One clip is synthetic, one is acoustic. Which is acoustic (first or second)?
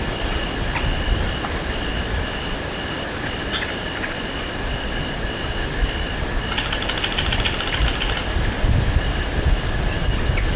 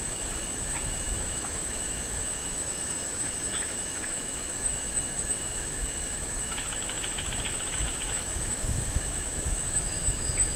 first